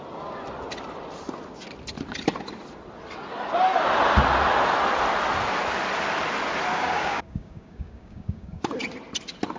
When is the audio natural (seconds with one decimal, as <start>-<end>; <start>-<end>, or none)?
0.0-6.7; 8.6-9.6